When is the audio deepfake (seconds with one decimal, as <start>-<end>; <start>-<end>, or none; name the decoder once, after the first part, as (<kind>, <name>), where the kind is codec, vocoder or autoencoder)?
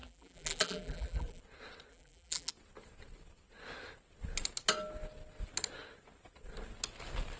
0.0-1.4 (vocoder, BigVGAN v2); 1.9-2.5